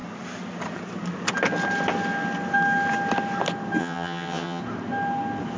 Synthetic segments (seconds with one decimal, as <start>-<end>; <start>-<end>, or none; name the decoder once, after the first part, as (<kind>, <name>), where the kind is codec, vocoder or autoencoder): 3.8-4.6 (vocoder, HiFi-GAN)